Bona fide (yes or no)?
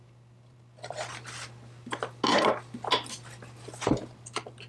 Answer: yes